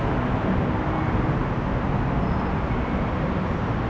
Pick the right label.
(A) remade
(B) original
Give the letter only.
B